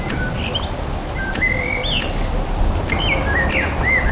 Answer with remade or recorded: recorded